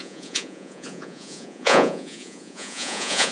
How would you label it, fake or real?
fake